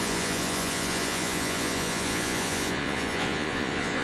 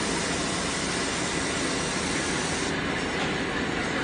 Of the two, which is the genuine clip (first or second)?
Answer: second